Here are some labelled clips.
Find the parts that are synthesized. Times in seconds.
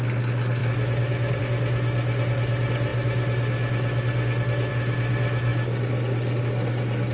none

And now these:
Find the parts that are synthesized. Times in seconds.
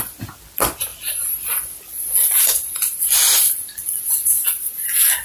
0.9-4.0 (vocoder, BigVGAN v2)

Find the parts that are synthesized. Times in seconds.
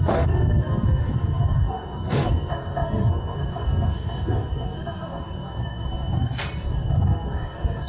0.0-7.9 (codec, SNAC)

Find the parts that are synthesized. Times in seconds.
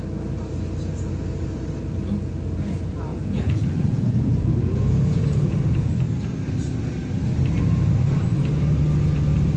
3.1-5.9 (vocoder, Vocos)